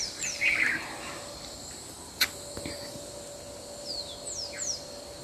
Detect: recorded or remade recorded